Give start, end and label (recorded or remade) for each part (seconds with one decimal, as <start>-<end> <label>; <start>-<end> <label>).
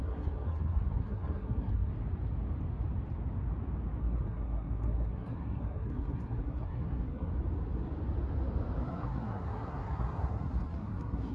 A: 0.0-1.9 remade; 1.9-4.0 recorded; 4.0-7.3 remade; 7.3-8.8 recorded; 8.8-11.3 remade